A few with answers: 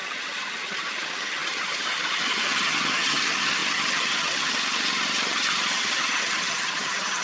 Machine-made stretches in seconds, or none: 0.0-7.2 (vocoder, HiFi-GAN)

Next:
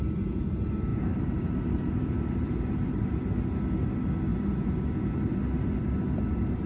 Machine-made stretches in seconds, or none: 0.9-3.2 (vocoder, BigVGAN v2)